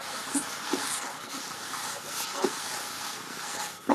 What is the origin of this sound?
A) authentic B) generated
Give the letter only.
B